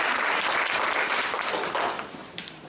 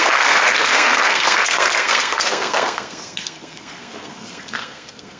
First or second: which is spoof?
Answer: second